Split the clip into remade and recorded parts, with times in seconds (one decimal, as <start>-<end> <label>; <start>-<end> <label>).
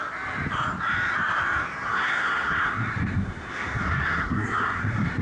0.0-1.9 recorded; 1.9-5.2 remade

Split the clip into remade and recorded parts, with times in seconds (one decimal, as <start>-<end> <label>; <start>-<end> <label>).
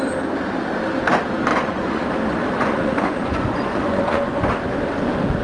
0.0-1.5 recorded; 1.5-2.1 remade; 2.1-2.5 recorded; 2.5-4.5 remade; 4.5-5.4 recorded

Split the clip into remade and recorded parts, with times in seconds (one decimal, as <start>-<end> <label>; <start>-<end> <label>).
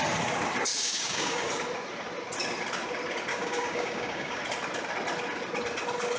0.0-0.7 recorded; 0.7-1.5 remade; 1.5-3.3 recorded; 3.3-4.4 remade; 4.4-6.2 recorded